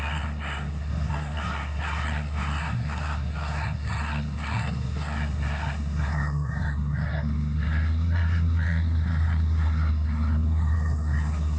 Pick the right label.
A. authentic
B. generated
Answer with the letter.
B